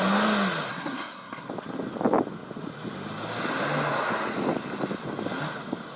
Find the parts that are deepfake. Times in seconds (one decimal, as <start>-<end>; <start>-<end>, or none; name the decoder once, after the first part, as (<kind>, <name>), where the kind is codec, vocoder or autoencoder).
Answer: 0.7-1.5 (codec, SNAC)